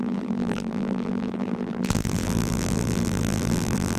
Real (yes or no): no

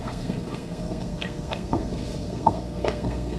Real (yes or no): no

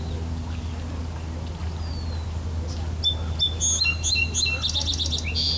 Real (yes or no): yes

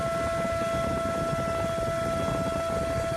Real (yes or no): yes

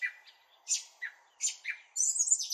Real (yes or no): yes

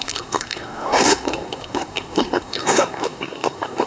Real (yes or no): no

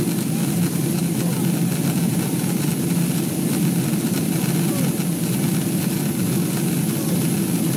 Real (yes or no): yes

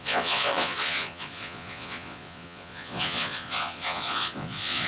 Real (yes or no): no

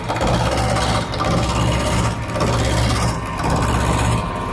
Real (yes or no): yes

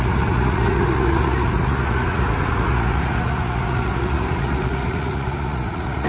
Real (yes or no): no